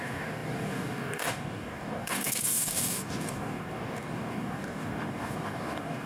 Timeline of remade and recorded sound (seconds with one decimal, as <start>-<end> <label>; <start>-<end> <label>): 0.0-6.1 remade